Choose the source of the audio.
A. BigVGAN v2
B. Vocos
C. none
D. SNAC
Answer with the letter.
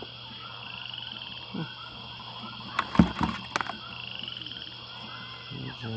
C